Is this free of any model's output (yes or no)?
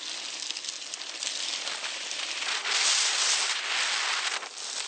yes